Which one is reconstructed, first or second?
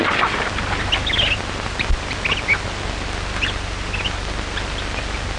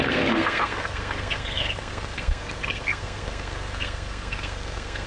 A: second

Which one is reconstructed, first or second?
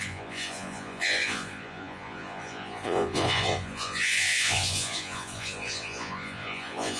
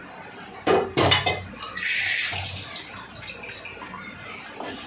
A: first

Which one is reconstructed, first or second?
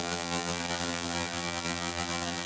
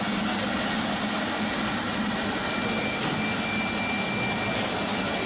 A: first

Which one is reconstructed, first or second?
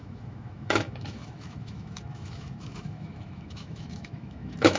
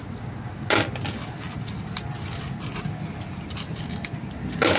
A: first